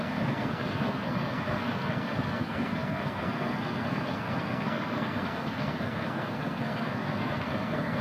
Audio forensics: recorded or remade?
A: remade